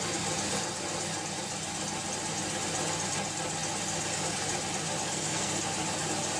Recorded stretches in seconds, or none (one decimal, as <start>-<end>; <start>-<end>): 0.0-5.0; 5.6-6.4